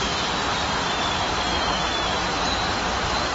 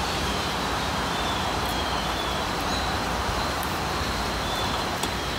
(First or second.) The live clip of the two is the first